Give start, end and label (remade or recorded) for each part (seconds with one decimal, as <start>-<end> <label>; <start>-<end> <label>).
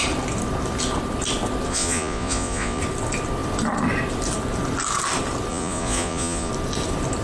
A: 0.0-1.7 recorded; 1.7-2.8 remade; 2.8-5.5 recorded; 5.5-6.5 remade; 6.5-7.2 recorded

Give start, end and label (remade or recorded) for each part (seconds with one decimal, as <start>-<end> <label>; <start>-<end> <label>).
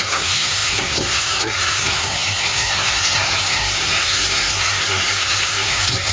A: 0.0-6.1 remade